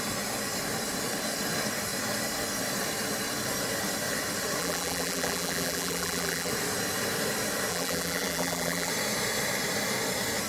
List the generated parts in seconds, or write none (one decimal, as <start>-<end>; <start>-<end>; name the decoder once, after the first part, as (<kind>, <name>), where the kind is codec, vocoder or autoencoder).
4.6-6.5 (vocoder, BigVGAN v2); 7.7-8.9